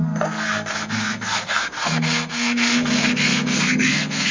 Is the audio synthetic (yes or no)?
yes